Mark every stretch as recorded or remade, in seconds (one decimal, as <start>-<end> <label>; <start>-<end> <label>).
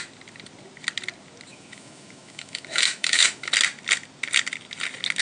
0.0-1.5 recorded; 1.5-3.5 remade; 3.5-5.2 recorded